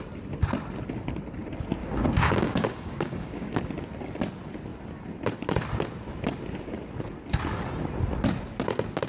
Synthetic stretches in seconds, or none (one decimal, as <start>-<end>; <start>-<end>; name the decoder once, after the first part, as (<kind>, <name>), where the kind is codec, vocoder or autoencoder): 1.8-3.6 (codec, DAC)